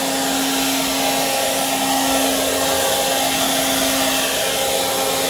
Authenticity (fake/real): real